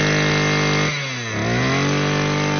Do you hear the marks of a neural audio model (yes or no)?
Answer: no